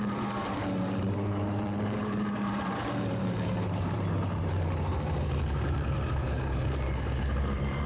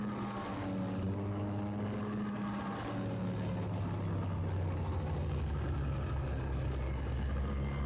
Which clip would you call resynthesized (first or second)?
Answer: first